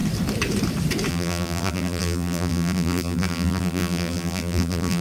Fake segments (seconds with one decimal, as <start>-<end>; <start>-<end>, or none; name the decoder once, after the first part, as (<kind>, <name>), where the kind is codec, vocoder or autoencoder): 1.1-5.0 (vocoder, BigVGAN v2)